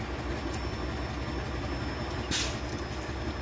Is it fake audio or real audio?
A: real